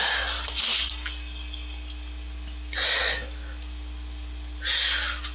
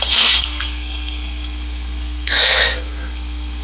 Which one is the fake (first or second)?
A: second